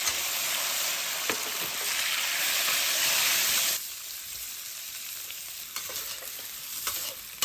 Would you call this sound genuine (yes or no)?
yes